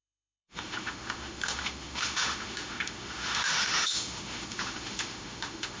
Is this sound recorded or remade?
remade